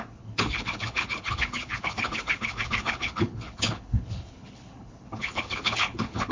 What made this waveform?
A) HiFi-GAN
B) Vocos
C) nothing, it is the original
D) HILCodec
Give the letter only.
D